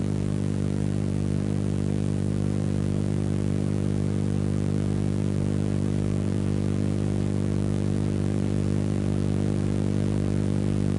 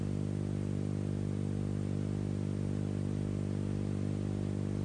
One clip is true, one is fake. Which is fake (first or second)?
first